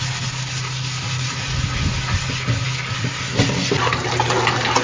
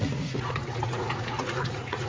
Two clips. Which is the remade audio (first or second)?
second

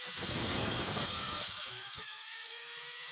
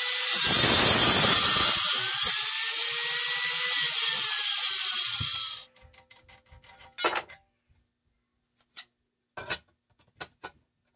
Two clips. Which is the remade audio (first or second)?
first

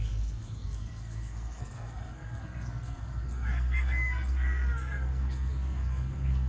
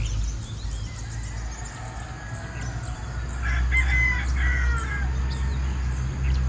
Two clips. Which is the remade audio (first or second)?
first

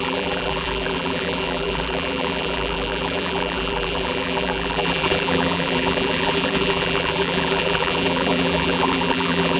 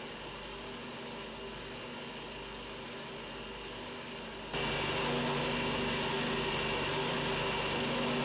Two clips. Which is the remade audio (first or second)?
first